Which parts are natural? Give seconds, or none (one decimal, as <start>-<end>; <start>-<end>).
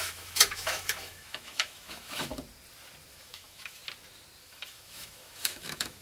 2.3-3.1; 3.8-4.4